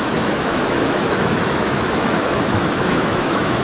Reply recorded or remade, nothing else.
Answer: remade